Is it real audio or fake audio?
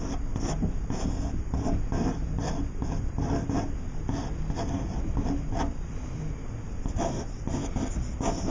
real